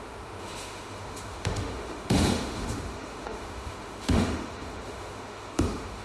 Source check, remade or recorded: remade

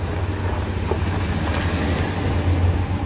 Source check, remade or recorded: recorded